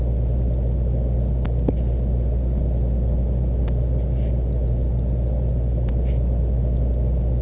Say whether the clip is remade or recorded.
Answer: recorded